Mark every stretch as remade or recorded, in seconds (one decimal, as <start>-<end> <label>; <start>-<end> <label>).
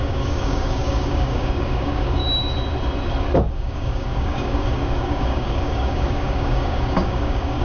0.0-2.2 remade; 2.2-3.5 recorded; 3.5-7.6 remade